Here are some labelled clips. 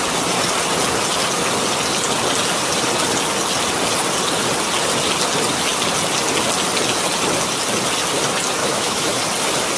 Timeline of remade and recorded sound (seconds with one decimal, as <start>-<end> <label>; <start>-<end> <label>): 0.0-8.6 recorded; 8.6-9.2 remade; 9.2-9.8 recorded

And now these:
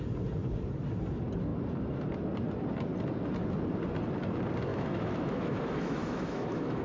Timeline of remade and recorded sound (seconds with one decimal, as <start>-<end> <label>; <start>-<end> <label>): 0.0-4.7 recorded; 4.7-6.8 remade

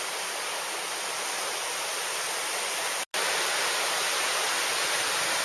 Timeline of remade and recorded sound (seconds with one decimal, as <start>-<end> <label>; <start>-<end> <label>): 0.0-5.4 recorded